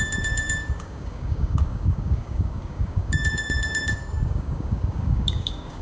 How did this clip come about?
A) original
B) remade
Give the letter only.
B